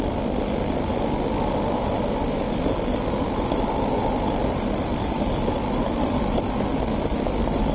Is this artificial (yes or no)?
no